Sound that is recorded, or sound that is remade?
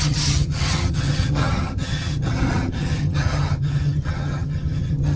remade